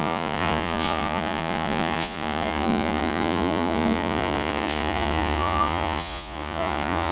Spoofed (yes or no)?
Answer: yes